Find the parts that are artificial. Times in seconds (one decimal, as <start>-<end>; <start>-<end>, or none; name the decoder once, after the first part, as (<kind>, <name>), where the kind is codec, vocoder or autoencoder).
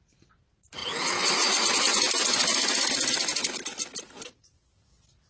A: none